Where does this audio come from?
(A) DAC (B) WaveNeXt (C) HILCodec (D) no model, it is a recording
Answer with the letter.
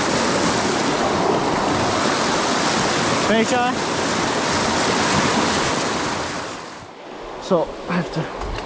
D